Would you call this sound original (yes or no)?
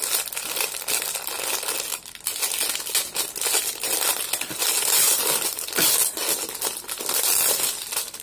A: yes